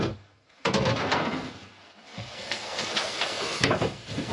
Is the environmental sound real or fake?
fake